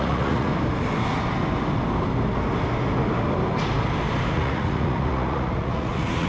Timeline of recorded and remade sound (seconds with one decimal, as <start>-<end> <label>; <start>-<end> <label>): 0.0-0.5 remade; 0.5-4.3 recorded; 4.3-6.3 remade